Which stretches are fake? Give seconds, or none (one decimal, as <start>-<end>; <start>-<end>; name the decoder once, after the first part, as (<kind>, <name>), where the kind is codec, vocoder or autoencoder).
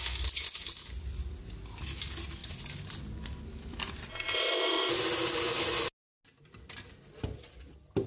4.1-4.9 (codec, ZipCodec)